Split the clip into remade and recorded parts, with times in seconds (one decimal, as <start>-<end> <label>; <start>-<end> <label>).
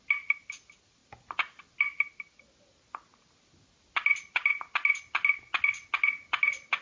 0.0-6.8 recorded